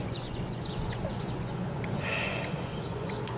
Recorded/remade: remade